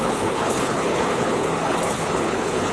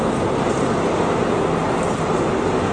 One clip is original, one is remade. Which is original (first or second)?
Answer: second